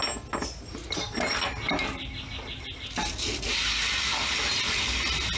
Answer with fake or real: real